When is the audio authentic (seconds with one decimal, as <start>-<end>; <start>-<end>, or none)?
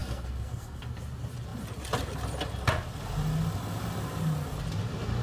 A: 1.0-5.2